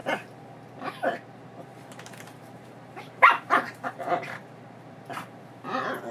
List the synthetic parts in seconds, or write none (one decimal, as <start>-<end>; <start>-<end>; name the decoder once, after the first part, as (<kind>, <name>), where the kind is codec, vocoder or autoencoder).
1.7-5.4 (vocoder, BigVGAN v2)